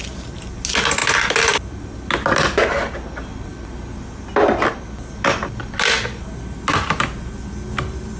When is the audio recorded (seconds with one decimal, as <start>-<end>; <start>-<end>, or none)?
0.0-8.2